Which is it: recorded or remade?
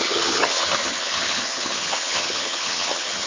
remade